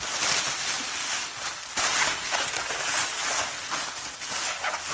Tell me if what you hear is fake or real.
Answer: real